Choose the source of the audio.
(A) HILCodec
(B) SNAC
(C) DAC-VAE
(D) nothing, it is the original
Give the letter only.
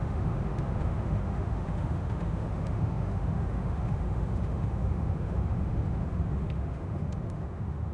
C